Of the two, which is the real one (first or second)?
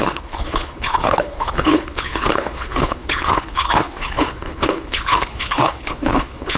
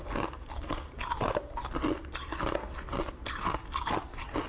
second